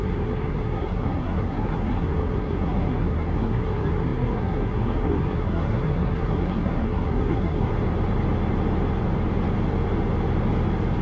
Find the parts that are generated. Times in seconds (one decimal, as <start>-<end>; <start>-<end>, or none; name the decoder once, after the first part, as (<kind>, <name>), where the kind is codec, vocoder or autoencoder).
0.0-7.7 (codec, SNAC)